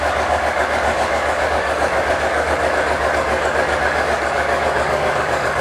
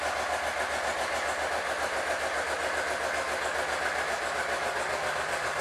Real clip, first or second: second